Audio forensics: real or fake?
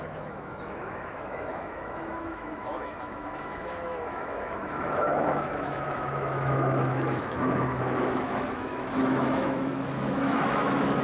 fake